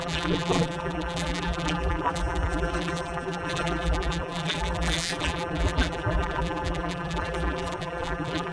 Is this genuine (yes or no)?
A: no